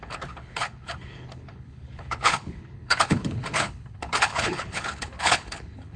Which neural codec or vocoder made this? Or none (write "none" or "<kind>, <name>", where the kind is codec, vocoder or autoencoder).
codec, HILCodec